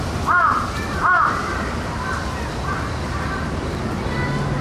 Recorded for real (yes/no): yes